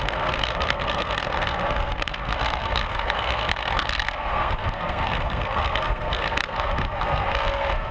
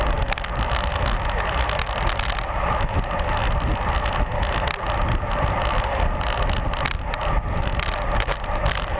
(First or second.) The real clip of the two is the second